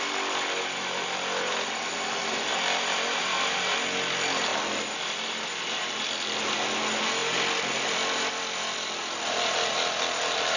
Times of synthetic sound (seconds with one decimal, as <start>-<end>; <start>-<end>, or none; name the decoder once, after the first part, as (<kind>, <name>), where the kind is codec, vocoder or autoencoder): none